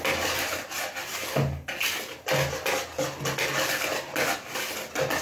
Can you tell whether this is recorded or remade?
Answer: recorded